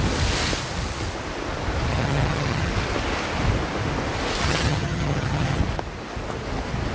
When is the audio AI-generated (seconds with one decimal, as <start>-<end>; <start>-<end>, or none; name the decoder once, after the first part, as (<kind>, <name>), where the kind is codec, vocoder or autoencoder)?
1.9-2.7 (vocoder, HiFi-GAN); 4.4-5.6